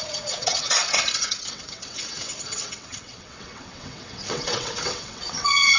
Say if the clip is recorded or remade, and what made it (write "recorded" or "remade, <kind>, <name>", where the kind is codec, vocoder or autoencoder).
remade, vocoder, WaveNeXt